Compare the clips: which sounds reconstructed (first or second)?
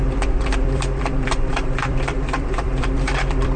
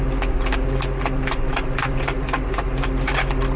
first